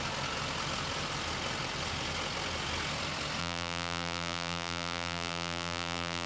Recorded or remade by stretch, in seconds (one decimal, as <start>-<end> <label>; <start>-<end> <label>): 0.0-3.4 recorded; 3.4-6.3 remade